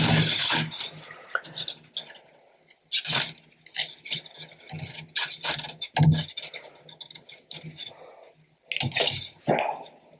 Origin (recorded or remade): recorded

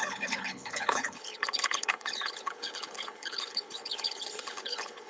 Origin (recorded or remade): remade